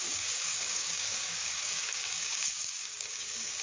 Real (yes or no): no